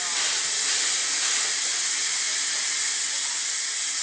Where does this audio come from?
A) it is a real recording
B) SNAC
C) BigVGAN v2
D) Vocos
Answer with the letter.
A